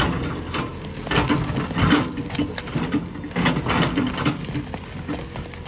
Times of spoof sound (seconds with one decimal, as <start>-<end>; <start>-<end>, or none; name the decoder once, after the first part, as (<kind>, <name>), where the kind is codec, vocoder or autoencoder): none